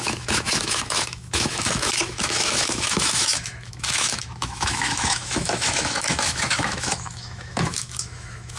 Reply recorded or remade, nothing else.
remade